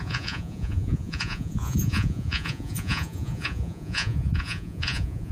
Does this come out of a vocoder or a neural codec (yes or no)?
yes